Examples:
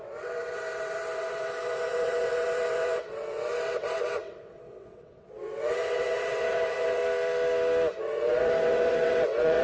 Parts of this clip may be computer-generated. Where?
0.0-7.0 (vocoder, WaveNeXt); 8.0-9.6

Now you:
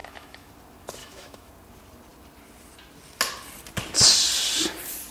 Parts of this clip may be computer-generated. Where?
0.0-0.5 (autoencoder, DAC-VAE); 1.0-1.5

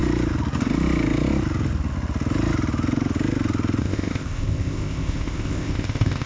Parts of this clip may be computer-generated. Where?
3.8-6.3 (codec, ZipCodec)

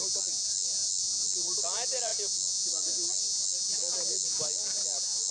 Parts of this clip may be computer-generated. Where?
none

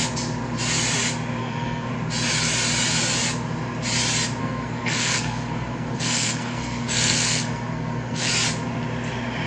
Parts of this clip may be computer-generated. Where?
1.4-1.9 (codec, SNAC); 4.4-8.3

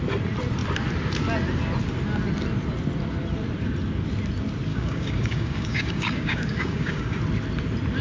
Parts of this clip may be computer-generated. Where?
4.7-7.2 (codec, DAC)

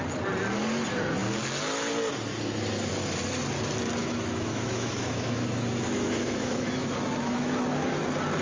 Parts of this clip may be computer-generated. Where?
4.0-8.0 (autoencoder, DAC-VAE)

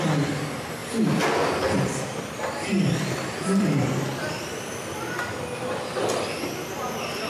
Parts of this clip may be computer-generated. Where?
0.8-5.2 (vocoder, BigVGAN v2)